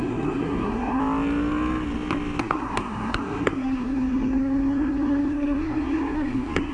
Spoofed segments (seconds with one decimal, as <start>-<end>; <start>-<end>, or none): 0.0-1.0; 2.4-6.7